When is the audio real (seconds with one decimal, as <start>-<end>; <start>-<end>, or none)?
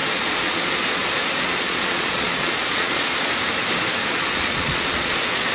3.3-4.0